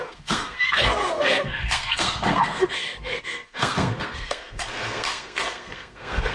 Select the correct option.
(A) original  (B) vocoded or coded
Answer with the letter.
B